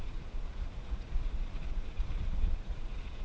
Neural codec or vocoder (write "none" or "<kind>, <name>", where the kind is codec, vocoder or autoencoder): vocoder, Vocos